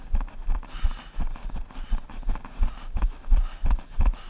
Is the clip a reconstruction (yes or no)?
no